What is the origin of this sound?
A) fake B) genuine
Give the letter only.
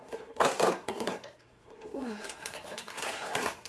A